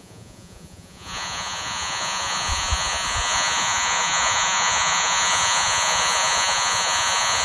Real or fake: fake